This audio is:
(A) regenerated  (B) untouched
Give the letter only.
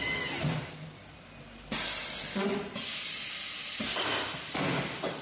B